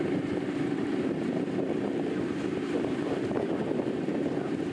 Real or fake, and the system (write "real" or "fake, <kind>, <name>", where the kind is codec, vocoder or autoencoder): fake, vocoder, BigVGAN v2